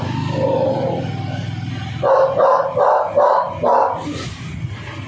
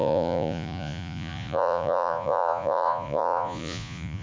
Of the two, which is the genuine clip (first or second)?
first